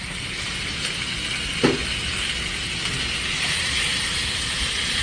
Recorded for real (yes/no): yes